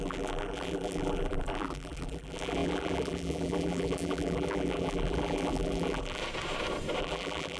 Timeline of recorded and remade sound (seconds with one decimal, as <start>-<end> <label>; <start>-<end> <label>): 0.0-6.2 remade; 6.2-7.0 recorded; 7.0-7.6 remade